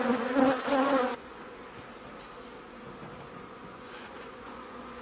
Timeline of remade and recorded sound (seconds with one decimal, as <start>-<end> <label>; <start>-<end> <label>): 0.0-1.6 remade; 1.6-3.2 recorded; 3.2-5.0 remade